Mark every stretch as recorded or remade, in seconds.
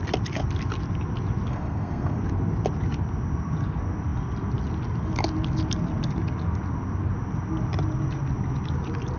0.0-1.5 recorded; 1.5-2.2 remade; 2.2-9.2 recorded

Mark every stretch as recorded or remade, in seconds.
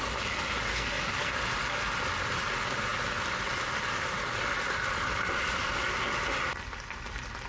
0.0-0.7 recorded; 0.7-1.3 remade; 1.3-7.5 recorded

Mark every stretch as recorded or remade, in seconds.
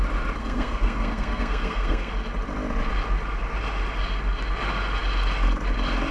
0.0-0.4 recorded; 0.4-2.1 remade; 2.1-6.1 recorded